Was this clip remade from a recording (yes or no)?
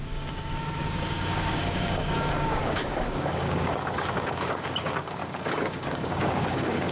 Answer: yes